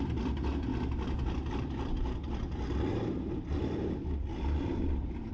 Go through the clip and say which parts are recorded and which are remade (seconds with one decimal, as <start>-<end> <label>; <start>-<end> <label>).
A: 0.0-0.7 remade; 0.7-1.5 recorded; 1.5-5.3 remade